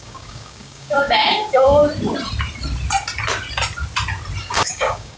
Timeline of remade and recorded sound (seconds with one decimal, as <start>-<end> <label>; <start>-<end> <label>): 0.0-1.8 remade; 1.8-4.4 recorded; 4.4-5.2 remade